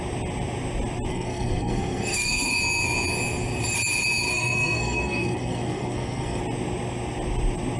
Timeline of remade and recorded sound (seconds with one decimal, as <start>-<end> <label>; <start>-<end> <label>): 0.0-1.1 recorded; 1.1-2.5 remade; 2.5-4.3 recorded; 4.3-6.4 remade; 6.4-7.8 recorded